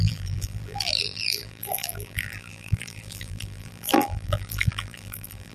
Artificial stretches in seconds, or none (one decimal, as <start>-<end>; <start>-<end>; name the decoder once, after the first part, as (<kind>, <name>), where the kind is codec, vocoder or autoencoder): 0.0-5.5 (vocoder, BigVGAN v2)